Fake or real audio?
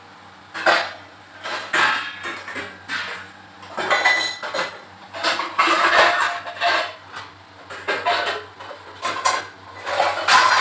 real